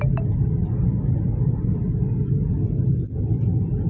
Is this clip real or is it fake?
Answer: real